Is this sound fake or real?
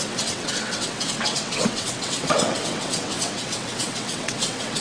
fake